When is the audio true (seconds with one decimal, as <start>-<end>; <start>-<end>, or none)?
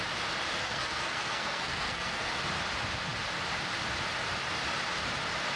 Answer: 0.0-0.6; 2.4-5.6